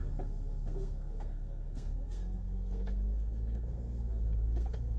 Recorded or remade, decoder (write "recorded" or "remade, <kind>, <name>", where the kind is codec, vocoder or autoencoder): remade, codec, SNAC